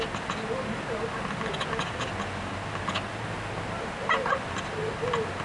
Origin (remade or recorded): recorded